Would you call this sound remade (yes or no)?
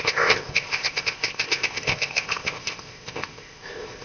yes